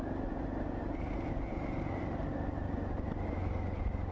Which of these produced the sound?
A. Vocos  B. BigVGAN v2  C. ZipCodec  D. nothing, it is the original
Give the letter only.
D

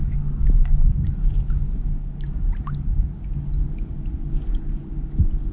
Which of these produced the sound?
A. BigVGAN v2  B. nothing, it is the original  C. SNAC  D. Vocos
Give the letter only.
B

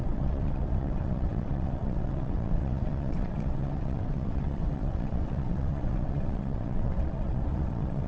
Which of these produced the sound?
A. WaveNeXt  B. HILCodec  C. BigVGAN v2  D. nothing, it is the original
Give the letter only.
A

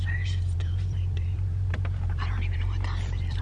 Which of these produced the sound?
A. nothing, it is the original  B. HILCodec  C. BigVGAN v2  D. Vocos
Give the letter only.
C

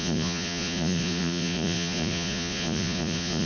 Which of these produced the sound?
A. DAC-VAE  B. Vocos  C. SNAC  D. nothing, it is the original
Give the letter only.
B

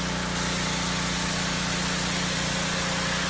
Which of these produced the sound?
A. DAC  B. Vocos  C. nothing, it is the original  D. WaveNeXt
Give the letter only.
C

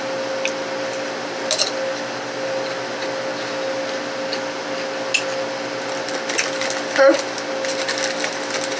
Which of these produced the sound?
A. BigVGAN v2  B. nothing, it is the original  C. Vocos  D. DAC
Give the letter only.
B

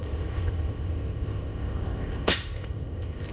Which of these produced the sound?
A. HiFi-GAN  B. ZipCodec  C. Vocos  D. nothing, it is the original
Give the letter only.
B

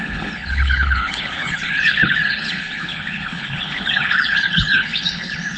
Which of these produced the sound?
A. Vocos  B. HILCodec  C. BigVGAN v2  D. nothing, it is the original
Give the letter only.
B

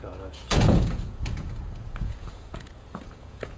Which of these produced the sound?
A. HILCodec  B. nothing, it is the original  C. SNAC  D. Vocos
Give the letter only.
D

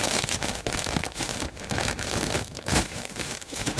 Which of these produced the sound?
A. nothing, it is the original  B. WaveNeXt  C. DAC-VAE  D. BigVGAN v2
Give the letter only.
C